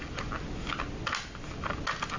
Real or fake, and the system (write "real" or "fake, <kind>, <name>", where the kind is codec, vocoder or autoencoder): real